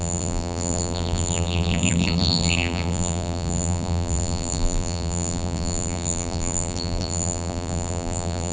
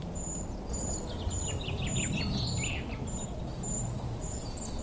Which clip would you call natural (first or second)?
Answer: second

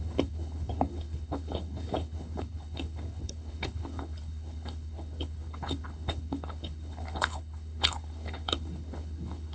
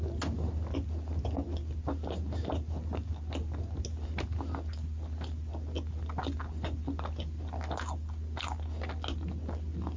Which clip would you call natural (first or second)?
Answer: second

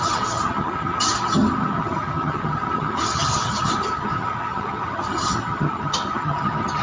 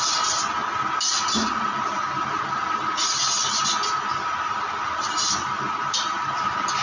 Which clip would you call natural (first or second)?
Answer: second